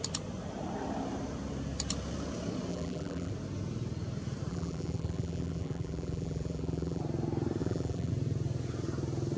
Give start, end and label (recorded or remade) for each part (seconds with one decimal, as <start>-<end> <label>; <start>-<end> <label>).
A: 0.0-2.7 recorded; 2.7-3.3 remade; 3.3-4.5 recorded; 4.5-7.0 remade; 7.0-7.6 recorded; 7.6-8.1 remade; 8.1-9.4 recorded